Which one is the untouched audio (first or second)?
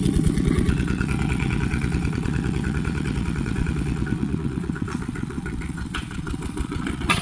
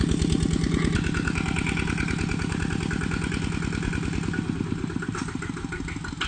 second